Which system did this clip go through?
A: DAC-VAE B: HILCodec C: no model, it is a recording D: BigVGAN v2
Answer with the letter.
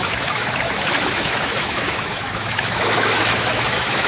A